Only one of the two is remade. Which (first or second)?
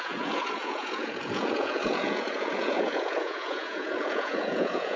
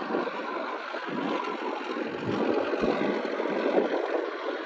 first